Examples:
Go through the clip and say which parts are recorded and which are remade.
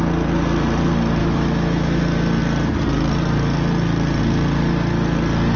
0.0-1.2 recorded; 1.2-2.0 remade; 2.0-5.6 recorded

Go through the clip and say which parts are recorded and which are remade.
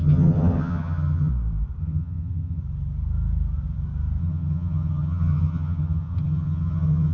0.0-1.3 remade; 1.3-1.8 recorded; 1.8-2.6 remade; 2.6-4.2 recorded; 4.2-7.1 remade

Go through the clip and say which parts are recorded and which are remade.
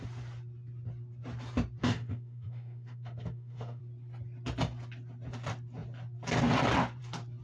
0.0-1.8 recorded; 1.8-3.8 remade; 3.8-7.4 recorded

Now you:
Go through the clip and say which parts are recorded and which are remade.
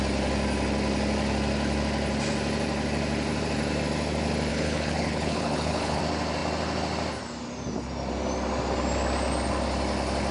0.0-4.5 recorded; 4.5-6.0 remade; 6.0-10.3 recorded